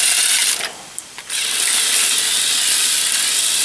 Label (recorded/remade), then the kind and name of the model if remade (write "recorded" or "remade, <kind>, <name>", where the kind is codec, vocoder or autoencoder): recorded